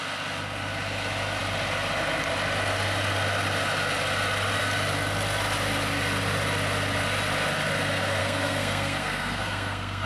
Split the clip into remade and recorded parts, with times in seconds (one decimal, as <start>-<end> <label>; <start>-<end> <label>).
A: 0.0-8.2 recorded; 8.2-10.1 remade